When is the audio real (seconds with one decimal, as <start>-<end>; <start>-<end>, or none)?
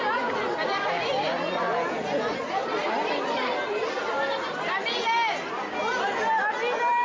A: 0.0-7.0